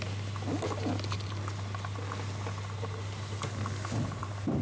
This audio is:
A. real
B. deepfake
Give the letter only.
A